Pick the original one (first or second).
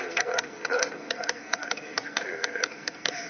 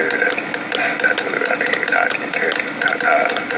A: second